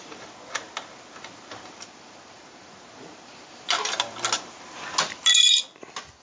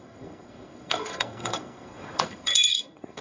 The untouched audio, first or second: first